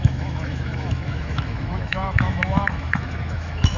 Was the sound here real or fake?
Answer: fake